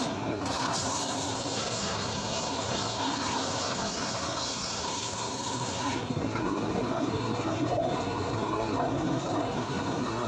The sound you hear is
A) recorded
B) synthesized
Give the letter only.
B